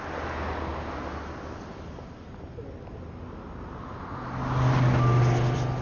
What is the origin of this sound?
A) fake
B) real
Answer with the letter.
B